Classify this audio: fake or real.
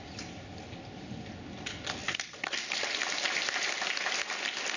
real